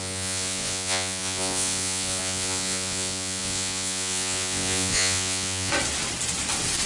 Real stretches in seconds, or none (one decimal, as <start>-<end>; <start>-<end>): 5.7-6.9